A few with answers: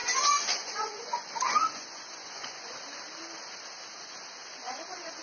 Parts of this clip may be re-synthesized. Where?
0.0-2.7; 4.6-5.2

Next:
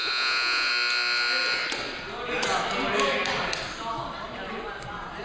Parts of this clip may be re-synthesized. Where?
0.0-0.7

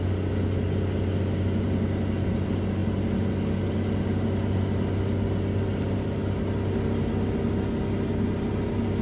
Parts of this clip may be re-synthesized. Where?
none

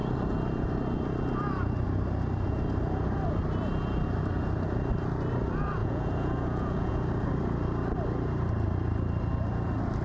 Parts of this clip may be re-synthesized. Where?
5.8-7.0

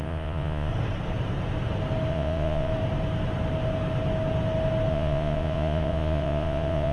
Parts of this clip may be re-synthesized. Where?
0.0-0.7; 2.1-2.7; 4.9-6.9

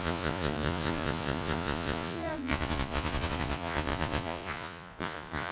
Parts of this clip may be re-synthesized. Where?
0.0-5.5